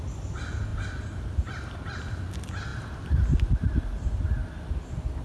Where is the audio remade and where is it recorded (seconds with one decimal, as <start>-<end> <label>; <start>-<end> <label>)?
0.0-5.2 recorded